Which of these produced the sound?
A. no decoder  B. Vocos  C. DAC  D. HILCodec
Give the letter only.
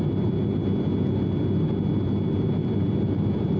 A